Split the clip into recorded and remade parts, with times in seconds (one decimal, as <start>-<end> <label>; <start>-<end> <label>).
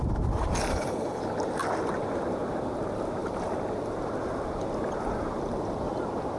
0.0-0.7 recorded; 0.7-1.2 remade; 1.2-6.4 recorded